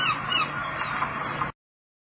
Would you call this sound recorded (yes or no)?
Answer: yes